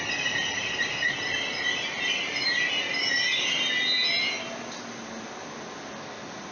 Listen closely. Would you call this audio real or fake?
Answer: real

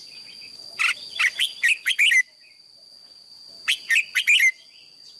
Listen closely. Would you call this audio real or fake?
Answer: real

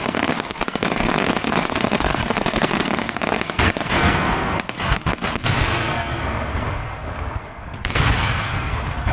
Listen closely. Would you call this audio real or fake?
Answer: fake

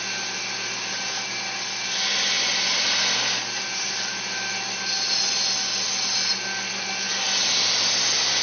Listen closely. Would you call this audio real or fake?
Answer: real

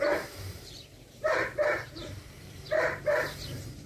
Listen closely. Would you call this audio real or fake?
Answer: fake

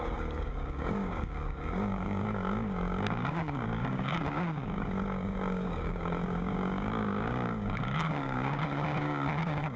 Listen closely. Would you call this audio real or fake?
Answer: fake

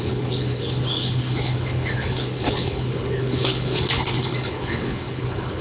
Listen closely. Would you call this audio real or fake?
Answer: fake